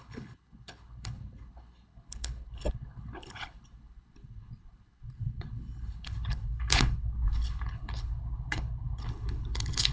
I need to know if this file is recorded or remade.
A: remade